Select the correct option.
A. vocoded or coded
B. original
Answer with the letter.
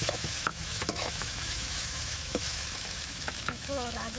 A